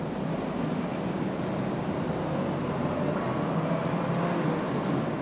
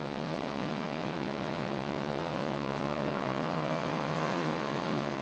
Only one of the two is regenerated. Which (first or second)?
second